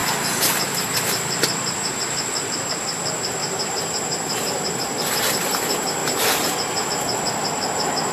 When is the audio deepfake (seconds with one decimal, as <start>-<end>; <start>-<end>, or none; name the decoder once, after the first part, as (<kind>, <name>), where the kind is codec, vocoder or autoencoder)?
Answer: 3.4-4.7 (vocoder, BigVGAN v2); 6.0-6.9